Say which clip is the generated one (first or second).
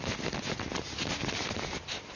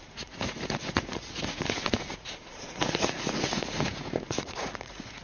second